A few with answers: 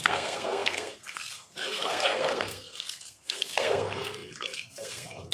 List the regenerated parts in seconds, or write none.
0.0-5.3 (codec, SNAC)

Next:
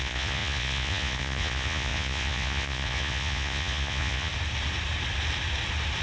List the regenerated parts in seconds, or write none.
0.0-4.3 (vocoder, Vocos)